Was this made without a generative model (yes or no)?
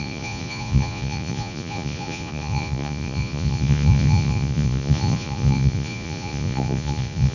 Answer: no